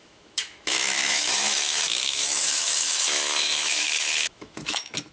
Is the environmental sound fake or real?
fake